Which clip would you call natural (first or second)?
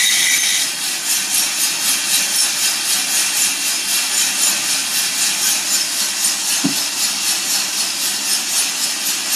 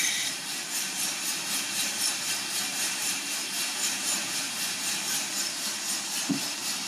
first